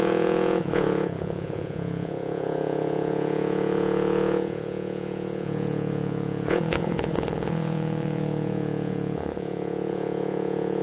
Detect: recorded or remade remade